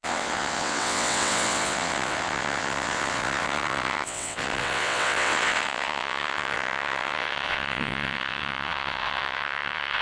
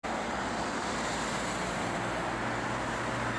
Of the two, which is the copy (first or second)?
first